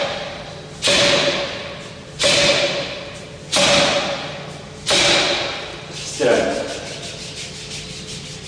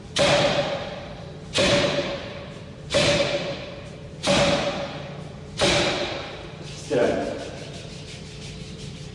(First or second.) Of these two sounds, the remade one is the second